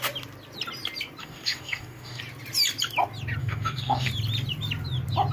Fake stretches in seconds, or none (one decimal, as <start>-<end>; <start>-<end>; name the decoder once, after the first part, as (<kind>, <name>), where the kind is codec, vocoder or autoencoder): 1.2-2.2 (codec, DAC); 3.4-4.1